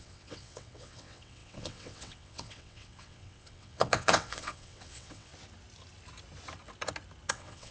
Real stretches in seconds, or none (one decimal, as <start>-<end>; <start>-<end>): 5.3-7.3